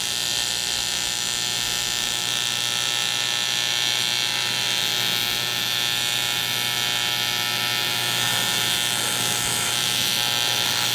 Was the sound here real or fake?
fake